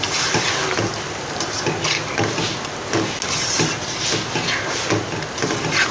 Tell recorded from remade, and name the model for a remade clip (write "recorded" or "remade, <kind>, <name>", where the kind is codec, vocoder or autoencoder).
recorded